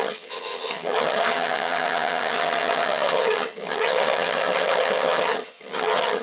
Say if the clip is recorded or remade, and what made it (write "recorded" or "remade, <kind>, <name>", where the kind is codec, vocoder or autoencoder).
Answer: remade, vocoder, HiFi-GAN